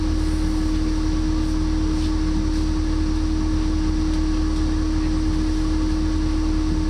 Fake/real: real